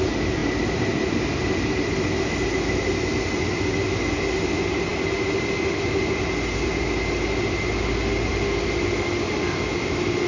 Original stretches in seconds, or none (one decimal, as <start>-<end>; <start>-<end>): 0.0-10.3